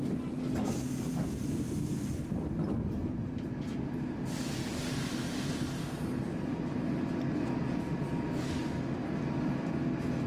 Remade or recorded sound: recorded